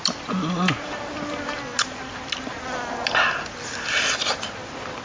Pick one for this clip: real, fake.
real